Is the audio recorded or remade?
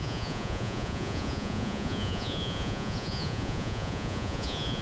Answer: remade